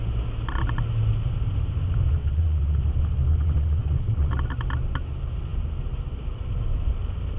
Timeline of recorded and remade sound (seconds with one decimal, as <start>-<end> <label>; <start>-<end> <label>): 0.0-2.2 recorded; 2.2-2.8 remade; 2.8-3.3 recorded; 3.3-4.3 remade; 4.3-7.4 recorded